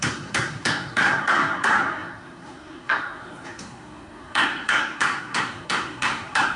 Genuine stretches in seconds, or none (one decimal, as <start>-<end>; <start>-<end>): none